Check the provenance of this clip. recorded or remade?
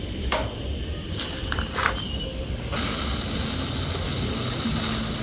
recorded